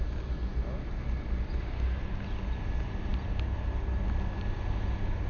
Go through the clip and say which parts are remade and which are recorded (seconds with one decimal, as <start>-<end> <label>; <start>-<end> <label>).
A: 0.0-5.3 recorded

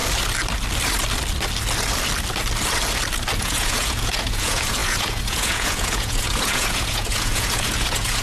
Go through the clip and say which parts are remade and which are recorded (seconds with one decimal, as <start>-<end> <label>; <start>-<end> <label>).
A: 0.0-3.4 recorded; 3.4-8.2 remade

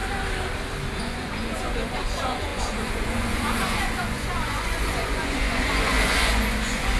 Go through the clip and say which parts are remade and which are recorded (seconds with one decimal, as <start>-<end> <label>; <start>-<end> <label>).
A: 0.0-1.0 recorded; 1.0-7.0 remade

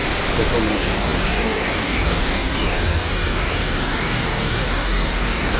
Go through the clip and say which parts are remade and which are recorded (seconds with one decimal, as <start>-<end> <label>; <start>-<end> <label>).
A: 0.0-0.7 recorded; 0.7-5.6 remade

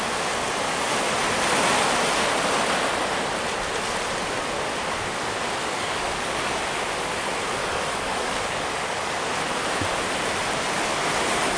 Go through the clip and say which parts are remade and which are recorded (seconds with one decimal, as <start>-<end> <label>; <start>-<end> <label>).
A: 0.0-5.6 recorded; 5.6-6.6 remade; 6.6-7.6 recorded; 7.6-9.1 remade; 9.1-11.6 recorded